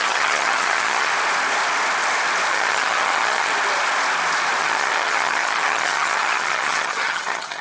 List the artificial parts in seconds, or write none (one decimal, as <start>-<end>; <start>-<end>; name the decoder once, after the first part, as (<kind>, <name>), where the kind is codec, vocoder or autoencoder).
0.0-1.1 (vocoder, HiFi-GAN); 2.5-3.5; 4.6-7.6